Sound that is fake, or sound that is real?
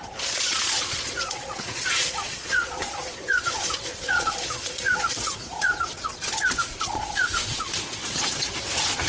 fake